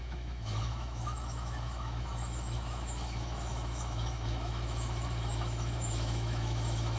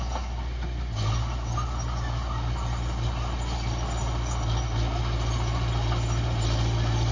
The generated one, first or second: first